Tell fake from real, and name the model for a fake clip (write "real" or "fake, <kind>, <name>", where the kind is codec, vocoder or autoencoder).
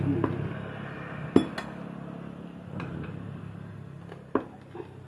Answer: real